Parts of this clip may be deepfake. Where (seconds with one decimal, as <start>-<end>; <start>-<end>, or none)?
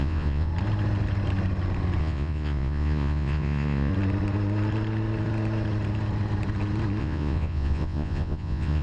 0.0-0.5; 2.0-3.9; 7.0-8.8